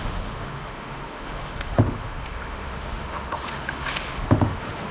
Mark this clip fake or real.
fake